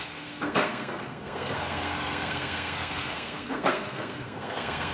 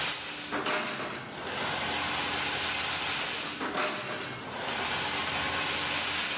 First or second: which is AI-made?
first